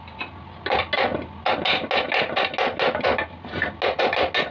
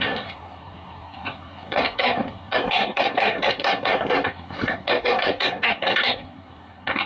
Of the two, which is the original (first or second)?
first